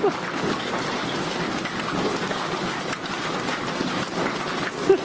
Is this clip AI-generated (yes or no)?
no